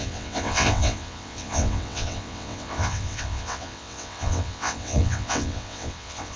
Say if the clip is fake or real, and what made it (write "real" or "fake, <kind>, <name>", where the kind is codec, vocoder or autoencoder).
fake, vocoder, WaveNeXt